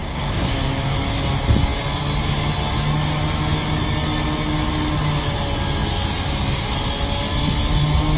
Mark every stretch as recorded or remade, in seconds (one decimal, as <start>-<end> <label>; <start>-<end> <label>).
0.0-0.5 remade; 0.5-8.2 recorded